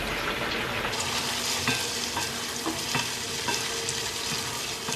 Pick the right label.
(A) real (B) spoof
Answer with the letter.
A